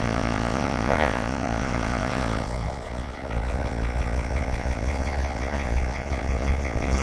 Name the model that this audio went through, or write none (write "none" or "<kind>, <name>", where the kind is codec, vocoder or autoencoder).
vocoder, Vocos